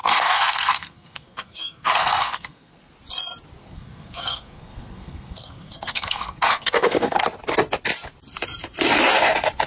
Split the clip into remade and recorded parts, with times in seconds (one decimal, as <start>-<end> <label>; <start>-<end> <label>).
0.0-2.9 remade; 2.9-3.6 recorded; 3.6-7.2 remade; 7.2-9.7 recorded